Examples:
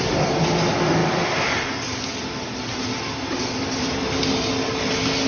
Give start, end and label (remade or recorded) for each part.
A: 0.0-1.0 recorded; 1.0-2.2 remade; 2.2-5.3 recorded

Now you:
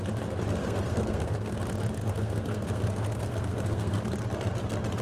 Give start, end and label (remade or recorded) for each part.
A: 0.0-0.6 recorded; 0.6-1.6 remade; 1.6-2.0 recorded; 2.0-4.0 remade; 4.0-5.0 recorded

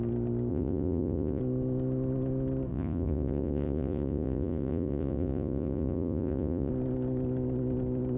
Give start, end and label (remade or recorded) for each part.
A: 0.0-0.5 recorded; 0.5-1.4 remade; 1.4-2.7 recorded; 2.7-6.7 remade; 6.7-8.2 recorded

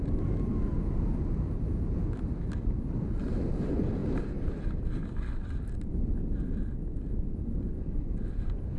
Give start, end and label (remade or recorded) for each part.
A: 0.0-8.8 recorded

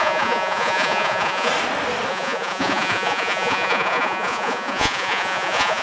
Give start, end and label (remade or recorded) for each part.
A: 0.0-1.5 remade; 1.5-2.1 recorded; 2.1-5.8 remade

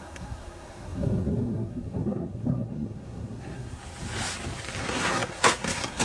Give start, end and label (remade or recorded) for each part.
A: 0.0-3.8 remade; 3.8-4.8 recorded; 4.8-6.0 remade

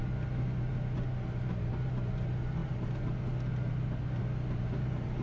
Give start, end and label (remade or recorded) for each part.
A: 0.0-5.2 recorded

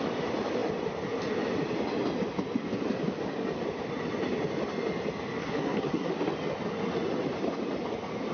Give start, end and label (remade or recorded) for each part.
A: 0.0-5.4 recorded; 5.4-6.1 remade; 6.1-8.3 recorded